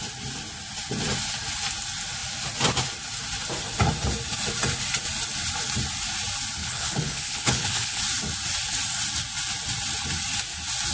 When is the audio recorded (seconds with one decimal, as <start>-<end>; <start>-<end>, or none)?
0.0-6.6; 8.0-10.9